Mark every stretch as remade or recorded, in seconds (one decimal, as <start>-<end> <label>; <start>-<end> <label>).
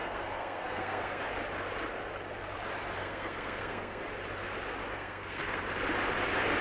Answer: 0.0-1.2 remade; 1.2-3.0 recorded; 3.0-4.0 remade; 4.0-4.9 recorded; 4.9-5.6 remade; 5.6-6.6 recorded